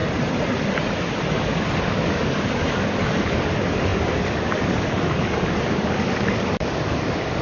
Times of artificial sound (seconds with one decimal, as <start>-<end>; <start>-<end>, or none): 1.8-7.4